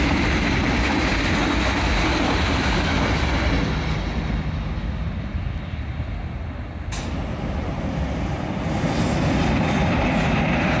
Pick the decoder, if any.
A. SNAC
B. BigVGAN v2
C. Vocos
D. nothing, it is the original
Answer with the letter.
D